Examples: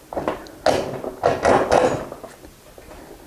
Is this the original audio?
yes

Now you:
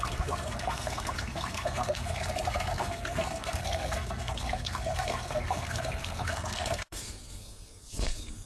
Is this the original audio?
no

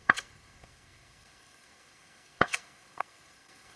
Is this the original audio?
no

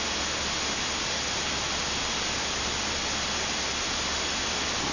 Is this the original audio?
yes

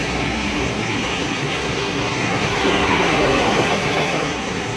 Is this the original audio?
no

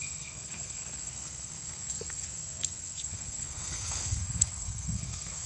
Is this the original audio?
no